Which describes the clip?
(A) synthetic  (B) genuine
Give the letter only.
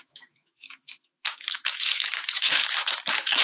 A